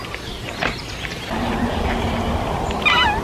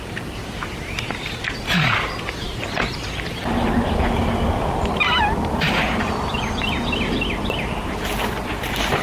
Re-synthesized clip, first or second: second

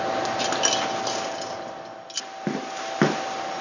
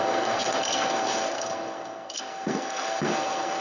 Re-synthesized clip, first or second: second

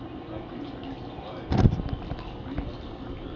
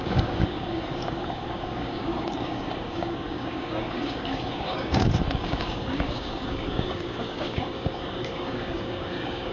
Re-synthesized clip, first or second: second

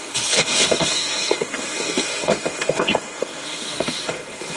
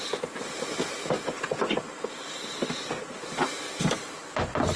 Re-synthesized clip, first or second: first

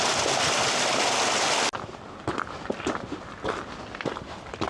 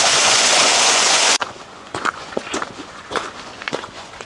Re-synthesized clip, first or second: second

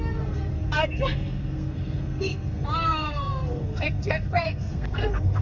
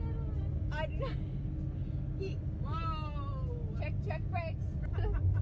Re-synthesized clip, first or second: first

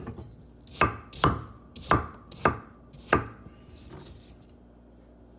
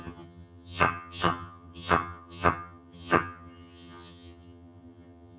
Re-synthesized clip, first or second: second